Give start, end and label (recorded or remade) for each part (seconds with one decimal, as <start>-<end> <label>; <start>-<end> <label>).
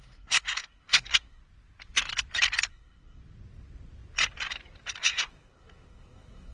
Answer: 0.0-1.4 remade; 1.4-2.7 recorded; 2.7-3.2 remade; 3.2-5.0 recorded; 5.0-6.5 remade